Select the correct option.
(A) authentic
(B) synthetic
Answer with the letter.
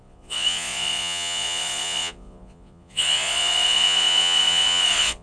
B